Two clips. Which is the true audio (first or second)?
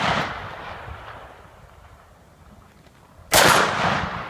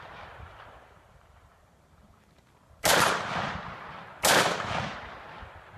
first